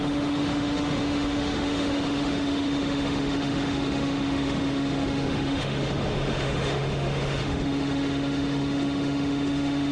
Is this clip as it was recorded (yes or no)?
no